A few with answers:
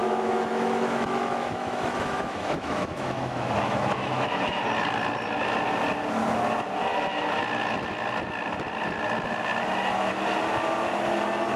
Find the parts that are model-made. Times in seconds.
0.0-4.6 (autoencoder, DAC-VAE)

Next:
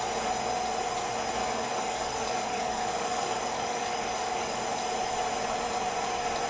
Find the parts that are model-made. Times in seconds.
1.4-4.6 (codec, DAC)

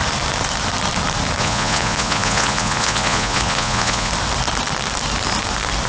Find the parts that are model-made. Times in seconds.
1.4-4.1 (vocoder, Vocos)

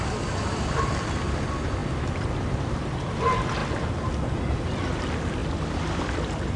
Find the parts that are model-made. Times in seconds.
none

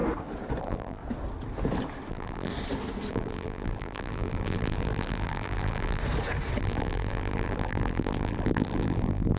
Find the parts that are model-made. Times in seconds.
0.6-1.0 (vocoder, BigVGAN v2); 2.1-2.5; 3.1-6.0; 6.6-9.4

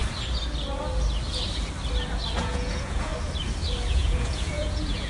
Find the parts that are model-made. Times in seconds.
2.4-3.1 (vocoder, Vocos); 3.9-5.1